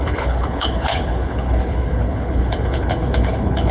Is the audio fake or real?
fake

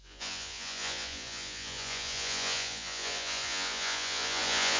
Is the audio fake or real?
fake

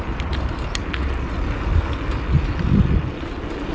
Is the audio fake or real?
real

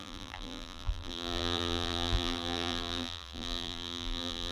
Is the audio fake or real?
fake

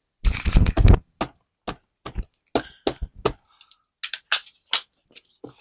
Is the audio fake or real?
real